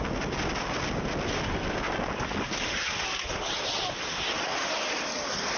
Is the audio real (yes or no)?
yes